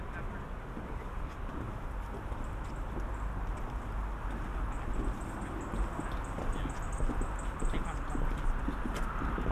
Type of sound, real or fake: real